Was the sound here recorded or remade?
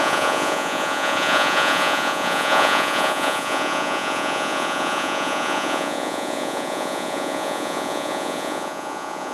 remade